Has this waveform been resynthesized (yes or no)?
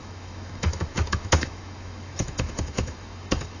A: yes